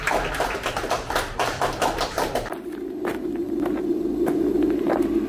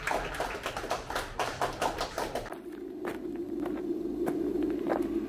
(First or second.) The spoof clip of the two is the second